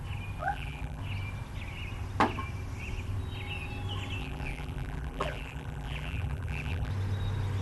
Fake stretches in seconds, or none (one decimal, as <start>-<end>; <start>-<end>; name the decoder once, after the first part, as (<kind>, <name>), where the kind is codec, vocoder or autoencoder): 0.4-1.0 (vocoder, BigVGAN v2); 4.2-6.9